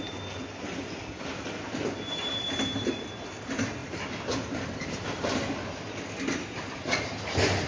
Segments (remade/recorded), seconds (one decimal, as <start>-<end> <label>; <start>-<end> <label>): 0.0-7.7 recorded